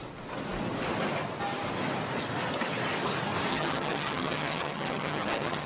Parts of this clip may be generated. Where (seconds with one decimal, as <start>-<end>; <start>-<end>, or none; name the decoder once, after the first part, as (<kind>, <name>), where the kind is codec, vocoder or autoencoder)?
3.5-5.7 (vocoder, HiFi-GAN)